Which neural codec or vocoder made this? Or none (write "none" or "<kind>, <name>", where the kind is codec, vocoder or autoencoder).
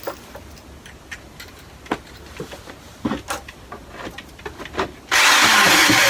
none